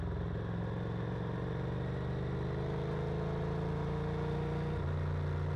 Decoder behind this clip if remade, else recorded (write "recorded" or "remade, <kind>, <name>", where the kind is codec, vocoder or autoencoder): recorded